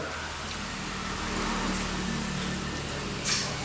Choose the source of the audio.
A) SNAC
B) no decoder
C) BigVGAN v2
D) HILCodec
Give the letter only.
B